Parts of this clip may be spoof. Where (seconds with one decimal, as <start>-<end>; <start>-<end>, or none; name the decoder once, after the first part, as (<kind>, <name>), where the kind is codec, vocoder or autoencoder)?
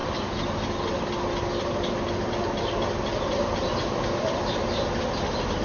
none